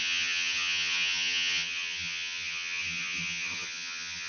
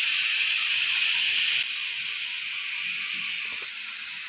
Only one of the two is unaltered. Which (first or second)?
second